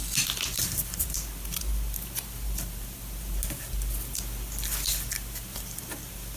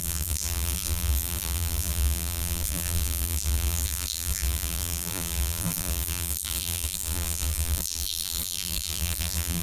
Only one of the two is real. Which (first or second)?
first